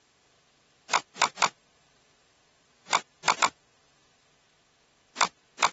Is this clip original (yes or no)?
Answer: yes